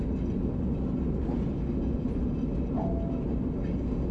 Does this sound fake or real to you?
real